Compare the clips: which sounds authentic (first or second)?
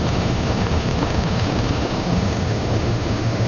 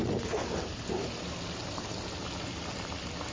second